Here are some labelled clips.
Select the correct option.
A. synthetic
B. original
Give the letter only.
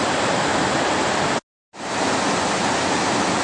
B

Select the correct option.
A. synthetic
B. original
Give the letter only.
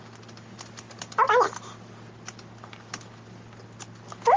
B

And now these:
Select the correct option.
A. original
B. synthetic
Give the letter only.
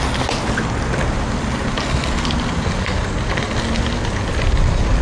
A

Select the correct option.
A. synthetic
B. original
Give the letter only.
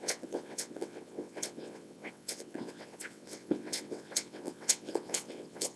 A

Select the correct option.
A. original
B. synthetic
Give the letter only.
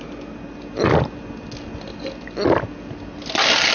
A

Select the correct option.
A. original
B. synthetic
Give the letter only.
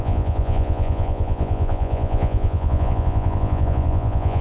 B